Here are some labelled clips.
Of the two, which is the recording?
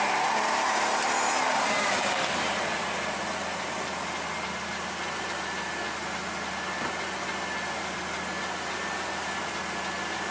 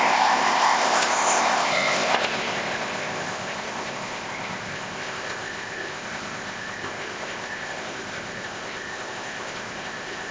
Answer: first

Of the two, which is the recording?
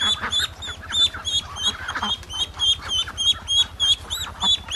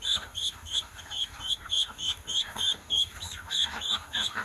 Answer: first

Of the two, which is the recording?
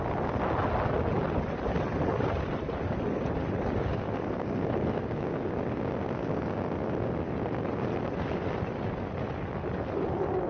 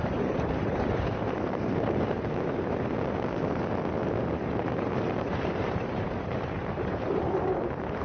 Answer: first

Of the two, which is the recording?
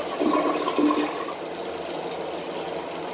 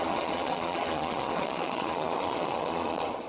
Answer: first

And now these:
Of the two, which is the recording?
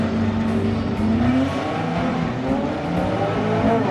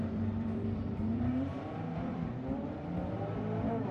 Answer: first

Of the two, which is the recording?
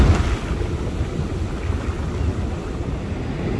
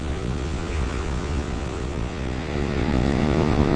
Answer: first